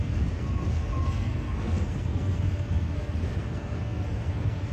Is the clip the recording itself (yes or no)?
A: no